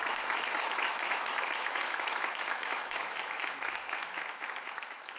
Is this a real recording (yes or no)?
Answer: no